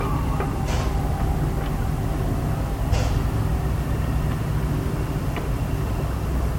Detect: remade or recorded recorded